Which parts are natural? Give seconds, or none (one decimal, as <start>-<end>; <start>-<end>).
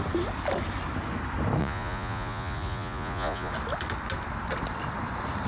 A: 0.0-1.6; 3.5-5.5